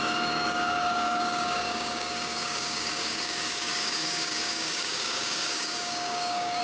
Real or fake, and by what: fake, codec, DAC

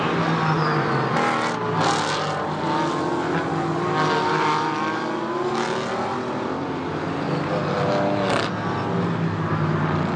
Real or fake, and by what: real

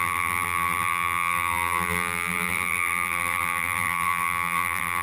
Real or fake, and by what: fake, vocoder, BigVGAN v2